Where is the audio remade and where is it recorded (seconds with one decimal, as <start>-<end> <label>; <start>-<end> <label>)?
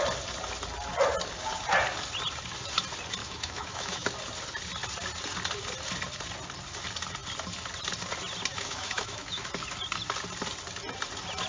0.0-3.2 recorded; 3.2-4.1 remade; 4.1-8.5 recorded; 8.5-9.5 remade; 9.5-11.5 recorded